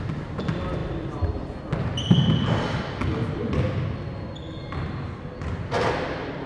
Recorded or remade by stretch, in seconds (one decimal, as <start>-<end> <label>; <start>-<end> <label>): 0.0-0.8 recorded; 0.8-2.8 remade; 2.8-6.5 recorded